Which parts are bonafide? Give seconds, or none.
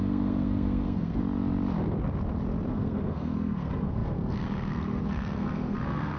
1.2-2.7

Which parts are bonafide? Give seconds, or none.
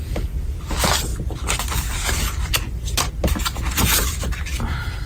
0.0-4.5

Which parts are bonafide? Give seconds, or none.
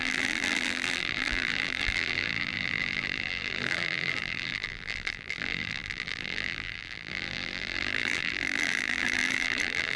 none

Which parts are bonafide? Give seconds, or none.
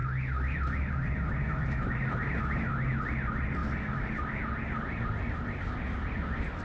3.0-3.6; 4.4-6.6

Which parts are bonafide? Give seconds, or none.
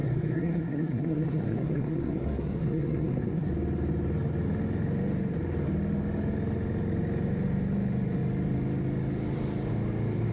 3.5-10.3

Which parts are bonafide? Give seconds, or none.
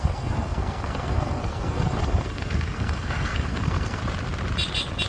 4.0-5.1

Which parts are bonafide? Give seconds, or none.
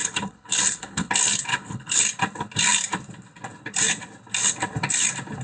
1.1-1.5; 2.0-5.4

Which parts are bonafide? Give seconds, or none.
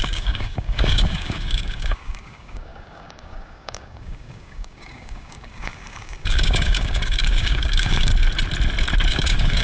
8.1-9.1